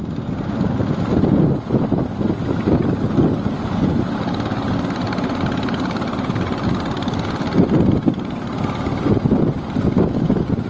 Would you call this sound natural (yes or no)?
yes